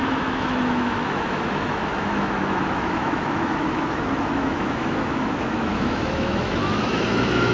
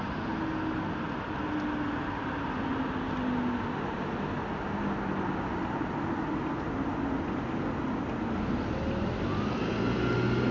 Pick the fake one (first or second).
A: first